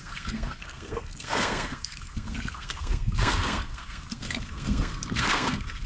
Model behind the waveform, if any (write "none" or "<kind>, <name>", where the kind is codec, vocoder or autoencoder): codec, SNAC